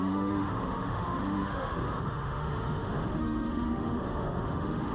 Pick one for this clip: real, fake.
fake